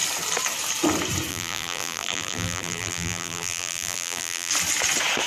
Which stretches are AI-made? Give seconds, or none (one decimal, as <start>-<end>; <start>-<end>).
1.3-4.5

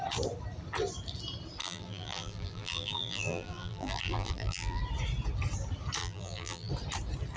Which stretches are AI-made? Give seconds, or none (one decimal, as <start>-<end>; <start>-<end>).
1.6-4.8; 6.0-6.7

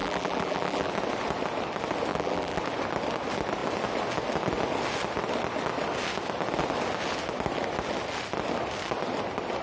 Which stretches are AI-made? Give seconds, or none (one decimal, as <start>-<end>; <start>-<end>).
0.0-0.9; 2.1-2.6

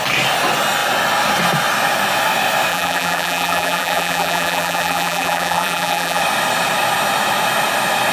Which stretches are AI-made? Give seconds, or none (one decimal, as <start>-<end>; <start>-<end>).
2.7-6.2

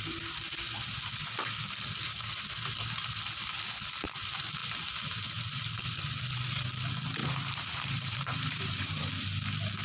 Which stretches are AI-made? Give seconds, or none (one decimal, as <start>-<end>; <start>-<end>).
7.2-9.1

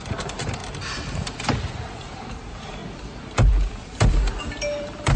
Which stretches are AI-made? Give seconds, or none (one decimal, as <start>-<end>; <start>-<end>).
0.0-0.6; 1.6-2.8; 4.4-5.2